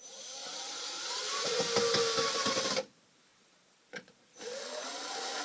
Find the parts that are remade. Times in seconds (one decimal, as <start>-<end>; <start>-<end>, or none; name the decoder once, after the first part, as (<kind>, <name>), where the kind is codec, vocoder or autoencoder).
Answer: 0.4-1.6 (vocoder, Vocos); 3.3-5.4